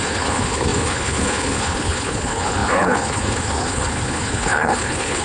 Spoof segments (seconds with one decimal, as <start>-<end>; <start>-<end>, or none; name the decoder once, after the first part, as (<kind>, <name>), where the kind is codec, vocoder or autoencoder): 0.0-5.2 (codec, HILCodec)